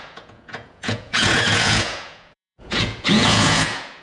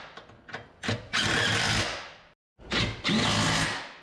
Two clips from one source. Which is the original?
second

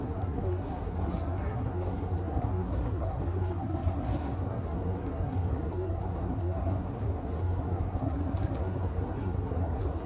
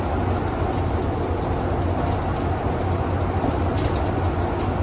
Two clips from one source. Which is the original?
second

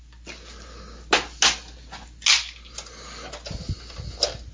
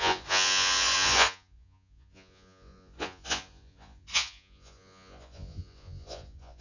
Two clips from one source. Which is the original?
first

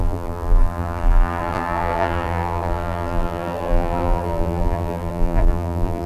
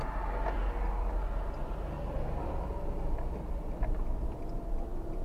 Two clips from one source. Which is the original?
second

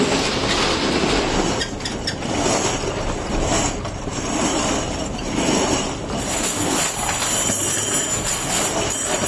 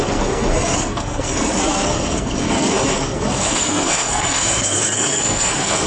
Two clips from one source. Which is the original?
first